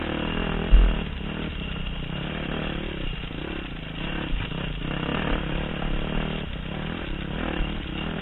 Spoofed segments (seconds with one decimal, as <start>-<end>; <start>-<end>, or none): none